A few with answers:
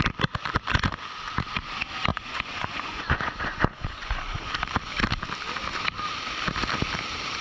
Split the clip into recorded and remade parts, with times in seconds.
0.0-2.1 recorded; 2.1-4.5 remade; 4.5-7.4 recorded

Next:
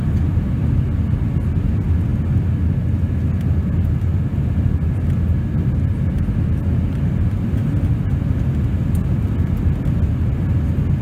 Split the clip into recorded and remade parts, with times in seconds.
0.0-11.0 recorded

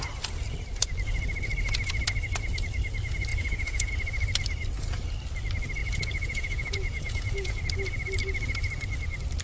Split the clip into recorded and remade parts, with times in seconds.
0.0-3.3 recorded; 3.3-3.9 remade; 3.9-5.8 recorded; 5.8-7.6 remade; 7.6-9.4 recorded

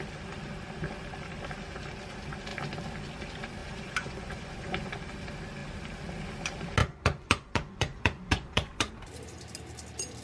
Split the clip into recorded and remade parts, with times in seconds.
0.0-3.6 recorded; 3.6-4.9 remade; 4.9-6.8 recorded; 6.8-8.9 remade; 8.9-10.2 recorded

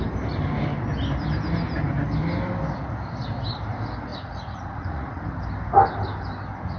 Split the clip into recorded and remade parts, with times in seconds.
0.0-4.1 recorded; 4.1-5.2 remade; 5.2-6.8 recorded

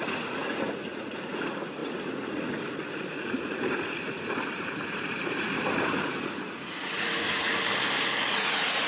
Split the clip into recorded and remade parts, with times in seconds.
0.0-7.5 remade; 7.5-8.4 recorded; 8.4-8.9 remade